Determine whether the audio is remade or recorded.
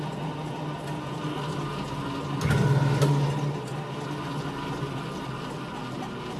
recorded